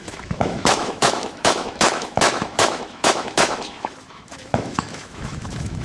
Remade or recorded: remade